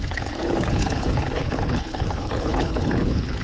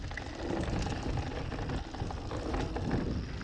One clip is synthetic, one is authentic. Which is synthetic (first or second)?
first